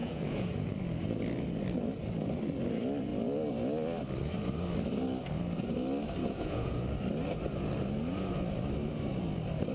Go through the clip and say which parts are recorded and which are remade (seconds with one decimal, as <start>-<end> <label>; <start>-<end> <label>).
0.0-0.7 remade; 0.7-6.2 recorded; 6.2-6.8 remade; 6.8-9.7 recorded